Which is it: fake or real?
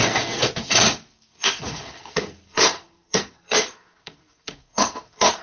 fake